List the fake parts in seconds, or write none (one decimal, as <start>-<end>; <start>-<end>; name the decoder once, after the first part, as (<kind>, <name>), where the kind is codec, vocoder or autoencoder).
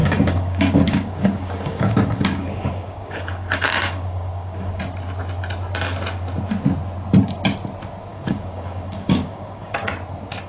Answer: 0.0-4.8 (codec, DAC); 8.1-9.9